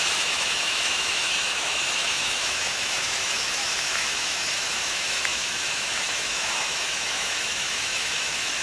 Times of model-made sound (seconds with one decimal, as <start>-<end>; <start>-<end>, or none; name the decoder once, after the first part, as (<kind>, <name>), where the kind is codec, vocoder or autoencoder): 0.0-8.6 (autoencoder, DAC-VAE)